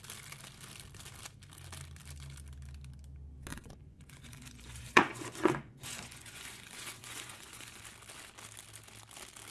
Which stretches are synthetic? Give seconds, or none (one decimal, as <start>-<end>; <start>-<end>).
3.5-7.8